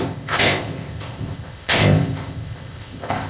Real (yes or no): no